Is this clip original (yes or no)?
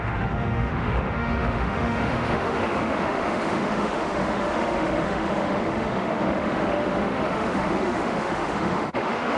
no